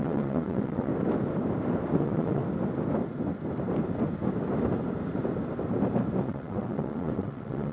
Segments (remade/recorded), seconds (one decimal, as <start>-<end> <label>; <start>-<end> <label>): 0.0-0.9 remade; 0.9-2.0 recorded; 2.0-2.4 remade; 2.4-6.2 recorded; 6.2-7.7 remade